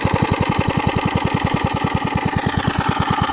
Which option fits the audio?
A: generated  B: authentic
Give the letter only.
B